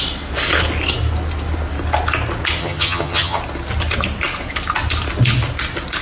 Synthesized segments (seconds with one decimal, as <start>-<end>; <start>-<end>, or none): 2.6-3.4